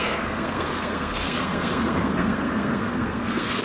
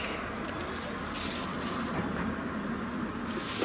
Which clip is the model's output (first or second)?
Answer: first